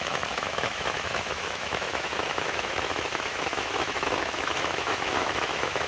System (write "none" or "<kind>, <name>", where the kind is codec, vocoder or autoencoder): autoencoder, DAC-VAE